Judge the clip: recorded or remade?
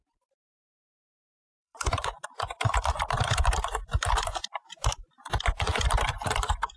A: remade